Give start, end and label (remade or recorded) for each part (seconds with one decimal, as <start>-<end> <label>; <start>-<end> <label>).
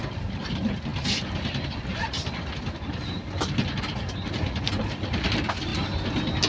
0.0-6.5 recorded